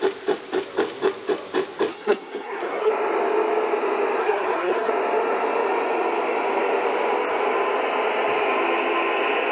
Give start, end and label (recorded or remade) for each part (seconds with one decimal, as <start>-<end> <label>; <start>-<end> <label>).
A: 0.0-1.9 recorded; 1.9-2.9 remade; 2.9-4.2 recorded; 4.2-4.9 remade; 4.9-9.5 recorded